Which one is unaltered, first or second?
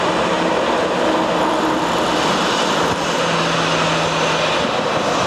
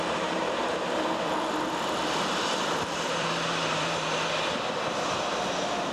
first